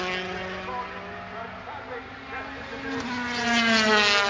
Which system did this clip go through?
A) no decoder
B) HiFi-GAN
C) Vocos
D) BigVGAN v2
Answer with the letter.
A